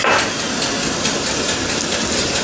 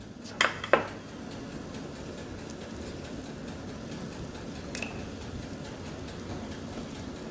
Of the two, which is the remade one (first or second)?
first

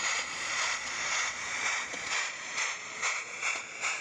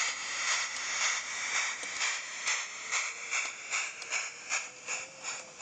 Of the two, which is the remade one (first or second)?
first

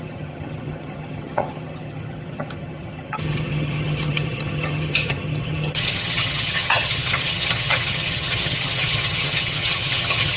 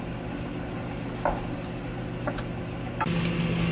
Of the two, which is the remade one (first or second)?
first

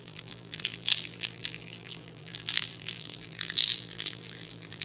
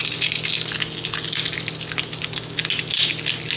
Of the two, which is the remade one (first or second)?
first